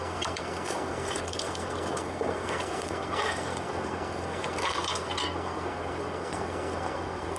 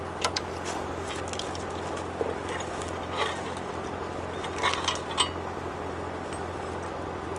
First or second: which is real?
second